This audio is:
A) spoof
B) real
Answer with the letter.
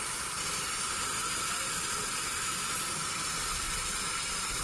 B